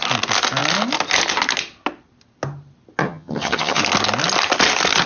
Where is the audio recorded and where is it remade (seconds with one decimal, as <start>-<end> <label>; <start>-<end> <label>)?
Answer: 0.0-3.0 recorded; 3.0-3.8 remade; 3.8-5.1 recorded